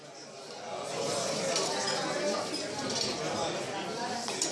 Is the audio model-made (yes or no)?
no